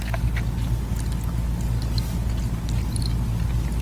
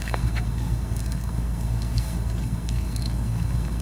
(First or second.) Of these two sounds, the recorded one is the first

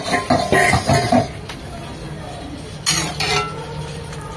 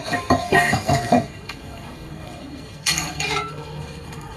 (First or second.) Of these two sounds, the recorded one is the first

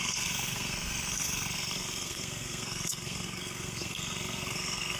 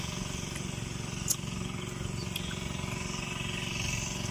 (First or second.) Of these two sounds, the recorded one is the second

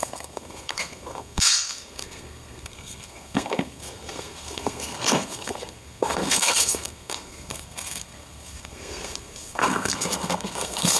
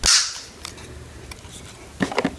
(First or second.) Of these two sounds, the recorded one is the second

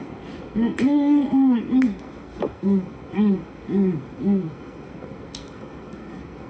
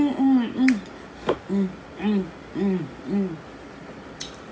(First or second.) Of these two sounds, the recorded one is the second